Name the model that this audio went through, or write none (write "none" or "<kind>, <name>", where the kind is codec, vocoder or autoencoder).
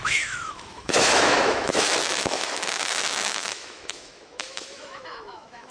autoencoder, DAC-VAE